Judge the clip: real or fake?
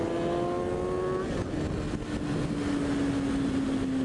real